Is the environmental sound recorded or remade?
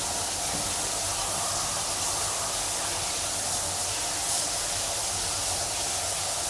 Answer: recorded